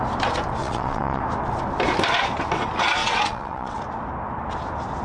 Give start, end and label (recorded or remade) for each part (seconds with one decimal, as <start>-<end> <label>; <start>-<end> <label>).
0.0-0.6 recorded; 0.6-1.2 remade; 1.2-3.0 recorded; 3.0-3.8 remade; 3.8-5.0 recorded